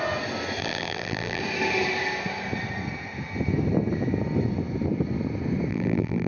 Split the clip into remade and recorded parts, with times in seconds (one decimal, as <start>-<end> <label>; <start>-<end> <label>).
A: 0.0-0.6 recorded; 0.6-1.4 remade; 1.4-5.7 recorded; 5.7-6.3 remade